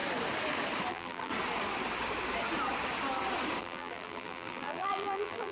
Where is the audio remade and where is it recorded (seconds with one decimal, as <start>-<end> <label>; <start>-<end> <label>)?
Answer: 0.0-0.9 recorded; 0.9-1.3 remade; 1.3-3.6 recorded; 3.6-5.5 remade